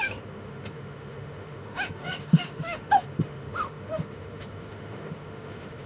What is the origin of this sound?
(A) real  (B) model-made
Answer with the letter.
B